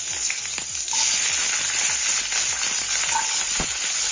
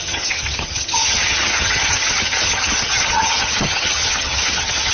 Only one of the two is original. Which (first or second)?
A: first